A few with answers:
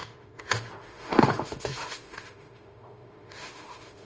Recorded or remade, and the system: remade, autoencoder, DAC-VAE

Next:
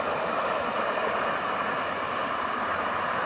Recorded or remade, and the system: remade, vocoder, BigVGAN v2